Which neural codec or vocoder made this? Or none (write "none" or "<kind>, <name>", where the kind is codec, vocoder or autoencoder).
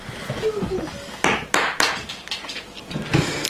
none